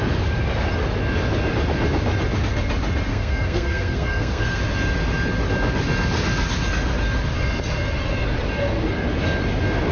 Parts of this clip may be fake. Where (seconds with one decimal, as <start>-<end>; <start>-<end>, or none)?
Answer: 3.1-4.6